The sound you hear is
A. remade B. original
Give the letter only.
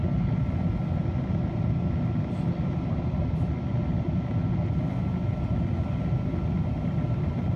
B